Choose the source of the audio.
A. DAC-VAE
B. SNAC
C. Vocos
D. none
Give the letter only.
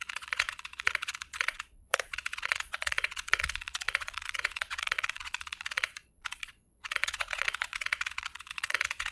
C